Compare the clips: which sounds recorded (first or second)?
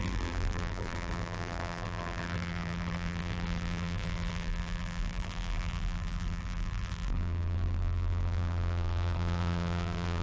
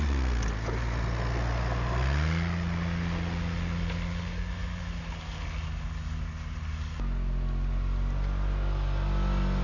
second